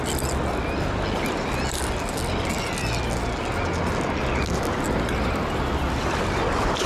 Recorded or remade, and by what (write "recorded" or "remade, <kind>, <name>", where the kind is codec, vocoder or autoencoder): recorded